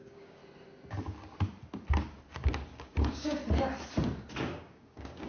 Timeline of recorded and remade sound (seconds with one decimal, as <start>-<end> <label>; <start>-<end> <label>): 0.0-0.4 remade; 0.4-2.8 recorded; 2.8-3.4 remade; 3.4-4.4 recorded; 4.4-5.3 remade